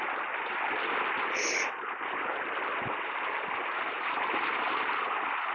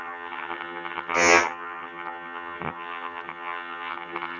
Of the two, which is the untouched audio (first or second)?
first